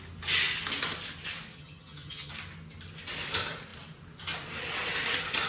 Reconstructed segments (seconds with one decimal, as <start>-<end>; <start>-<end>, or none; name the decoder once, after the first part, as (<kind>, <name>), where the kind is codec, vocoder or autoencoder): 1.5-2.3 (vocoder, HiFi-GAN)